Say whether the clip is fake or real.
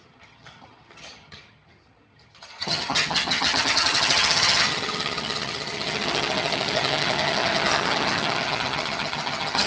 fake